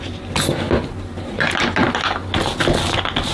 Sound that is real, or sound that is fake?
real